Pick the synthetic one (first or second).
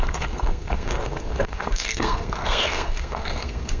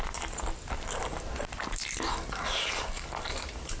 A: first